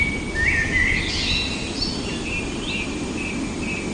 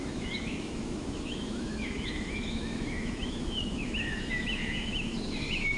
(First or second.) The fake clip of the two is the second